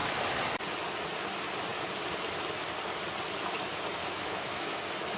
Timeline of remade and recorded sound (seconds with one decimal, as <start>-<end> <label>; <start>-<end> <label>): 0.0-4.0 recorded; 4.0-4.8 remade; 4.8-5.2 recorded